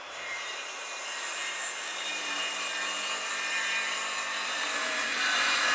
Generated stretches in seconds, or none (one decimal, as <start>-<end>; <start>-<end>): 0.0-5.7